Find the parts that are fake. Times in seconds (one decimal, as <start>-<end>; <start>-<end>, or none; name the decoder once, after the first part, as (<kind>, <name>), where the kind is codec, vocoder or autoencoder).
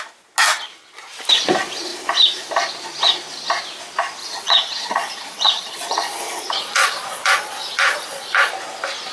4.2-8.5 (vocoder, Vocos)